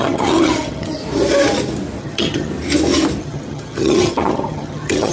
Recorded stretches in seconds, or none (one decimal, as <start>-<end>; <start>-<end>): 1.0-2.0; 2.5-3.2